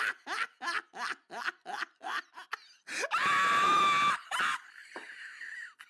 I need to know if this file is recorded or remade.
recorded